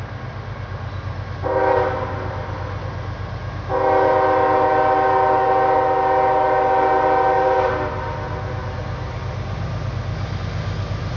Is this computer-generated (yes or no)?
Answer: no